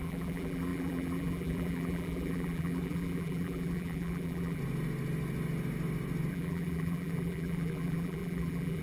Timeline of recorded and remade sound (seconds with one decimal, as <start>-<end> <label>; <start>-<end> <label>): 0.0-4.6 remade; 4.6-6.3 recorded; 6.3-8.8 remade